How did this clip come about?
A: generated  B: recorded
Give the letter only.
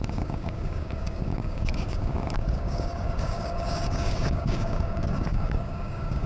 A